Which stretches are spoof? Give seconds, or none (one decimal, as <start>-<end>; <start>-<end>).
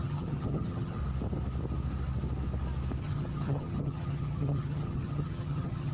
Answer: 0.0-1.0; 3.0-5.9